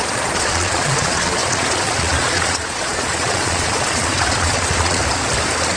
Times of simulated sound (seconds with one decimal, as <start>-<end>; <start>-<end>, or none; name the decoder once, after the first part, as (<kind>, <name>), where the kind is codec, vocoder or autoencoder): 0.0-5.0 (vocoder, Vocos)